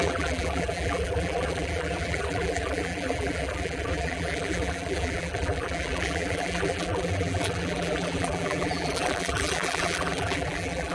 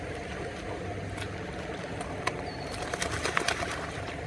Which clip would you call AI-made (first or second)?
first